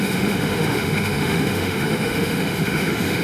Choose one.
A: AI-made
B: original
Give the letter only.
A